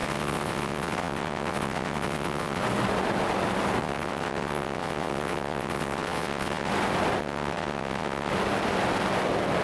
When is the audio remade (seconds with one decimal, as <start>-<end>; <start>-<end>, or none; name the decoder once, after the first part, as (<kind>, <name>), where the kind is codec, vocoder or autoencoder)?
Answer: 0.0-2.6 (vocoder, WaveNeXt); 3.8-6.7; 7.2-8.3